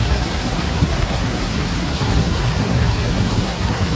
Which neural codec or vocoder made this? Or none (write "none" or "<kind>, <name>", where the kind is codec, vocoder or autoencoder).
codec, SNAC